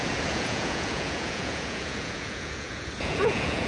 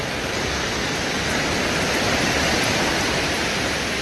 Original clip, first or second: second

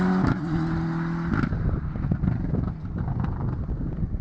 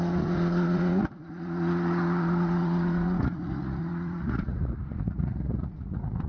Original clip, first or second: first